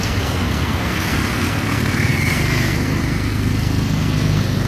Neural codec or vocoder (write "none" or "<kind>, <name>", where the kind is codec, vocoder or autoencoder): codec, SNAC